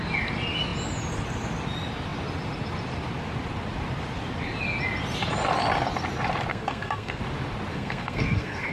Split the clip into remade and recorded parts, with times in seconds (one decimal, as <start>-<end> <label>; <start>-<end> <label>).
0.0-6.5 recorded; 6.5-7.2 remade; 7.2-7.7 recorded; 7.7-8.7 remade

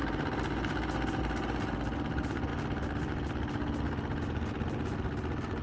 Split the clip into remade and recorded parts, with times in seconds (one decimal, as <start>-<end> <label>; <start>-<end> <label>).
0.0-5.6 recorded

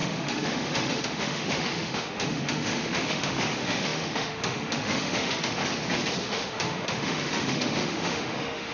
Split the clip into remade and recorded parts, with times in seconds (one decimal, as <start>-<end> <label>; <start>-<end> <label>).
0.0-5.6 remade; 5.6-6.2 recorded; 6.2-8.7 remade

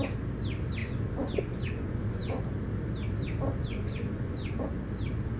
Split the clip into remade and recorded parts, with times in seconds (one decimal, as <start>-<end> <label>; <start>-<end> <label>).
0.0-0.8 recorded; 0.8-2.4 remade; 2.4-3.6 recorded; 3.6-4.7 remade; 4.7-5.4 recorded

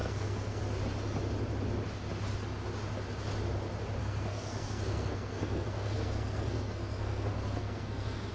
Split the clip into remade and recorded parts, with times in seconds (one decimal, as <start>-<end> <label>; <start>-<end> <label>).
0.0-0.6 remade; 0.6-4.0 recorded; 4.0-8.3 remade